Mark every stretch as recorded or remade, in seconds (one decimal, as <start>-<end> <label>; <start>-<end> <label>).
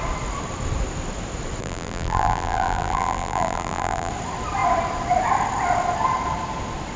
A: 0.0-1.6 recorded; 1.6-4.1 remade; 4.1-7.0 recorded